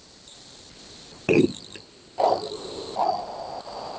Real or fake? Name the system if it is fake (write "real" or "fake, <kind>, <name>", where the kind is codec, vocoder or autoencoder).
real